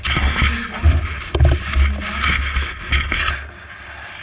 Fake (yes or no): no